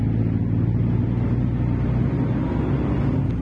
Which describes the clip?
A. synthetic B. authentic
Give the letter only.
B